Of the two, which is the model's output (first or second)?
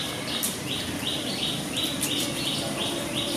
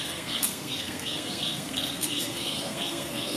second